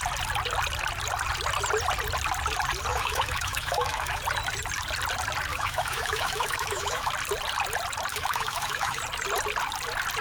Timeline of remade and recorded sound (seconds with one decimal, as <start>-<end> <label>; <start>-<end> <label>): 0.0-2.9 recorded; 2.9-4.2 remade; 4.2-5.5 recorded; 5.5-7.1 remade; 7.1-8.1 recorded; 8.1-9.0 remade; 9.0-10.2 recorded